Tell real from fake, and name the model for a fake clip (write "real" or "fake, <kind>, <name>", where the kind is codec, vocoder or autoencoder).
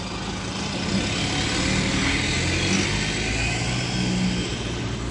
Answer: real